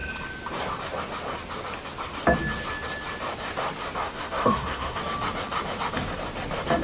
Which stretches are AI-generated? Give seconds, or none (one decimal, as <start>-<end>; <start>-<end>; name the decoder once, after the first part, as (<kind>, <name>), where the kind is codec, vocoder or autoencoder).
4.0-5.0 (codec, SNAC)